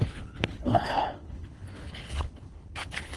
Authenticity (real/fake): fake